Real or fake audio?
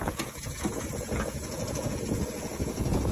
fake